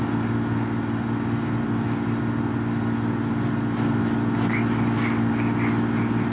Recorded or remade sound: recorded